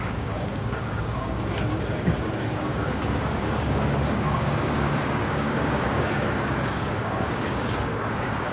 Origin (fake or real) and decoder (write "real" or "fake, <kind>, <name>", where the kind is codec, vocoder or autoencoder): fake, codec, DAC